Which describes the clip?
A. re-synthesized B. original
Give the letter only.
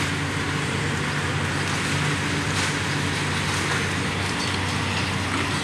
B